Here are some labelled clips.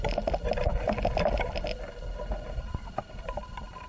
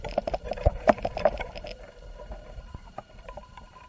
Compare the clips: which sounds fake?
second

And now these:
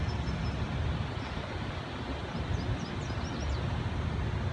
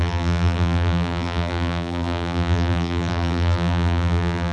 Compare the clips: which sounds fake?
second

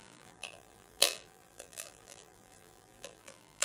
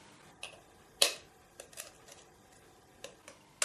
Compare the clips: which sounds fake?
first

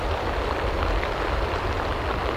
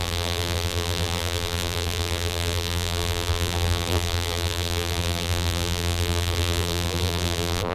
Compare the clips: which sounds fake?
second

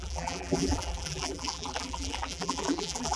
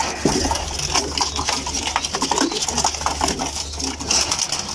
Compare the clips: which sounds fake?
first